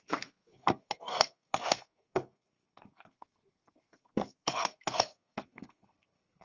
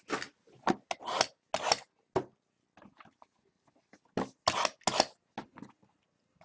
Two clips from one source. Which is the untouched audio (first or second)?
second